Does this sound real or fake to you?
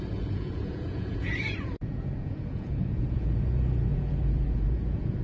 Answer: fake